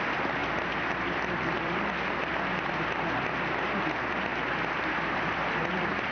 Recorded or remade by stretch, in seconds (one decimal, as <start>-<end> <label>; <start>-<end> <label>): 0.0-0.4 recorded; 0.4-3.6 remade; 3.6-4.3 recorded; 4.3-6.1 remade